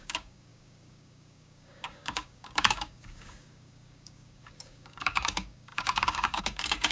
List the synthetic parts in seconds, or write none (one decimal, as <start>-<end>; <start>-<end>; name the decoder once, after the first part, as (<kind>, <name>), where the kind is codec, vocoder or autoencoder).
0.0-6.9 (codec, DAC)